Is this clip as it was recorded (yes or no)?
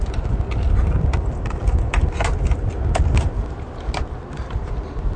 yes